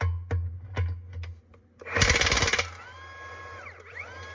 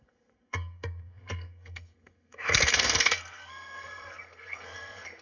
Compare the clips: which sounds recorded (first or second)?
first